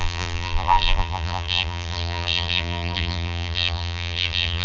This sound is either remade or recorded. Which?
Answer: remade